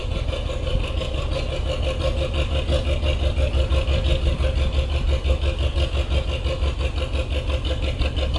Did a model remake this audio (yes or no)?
no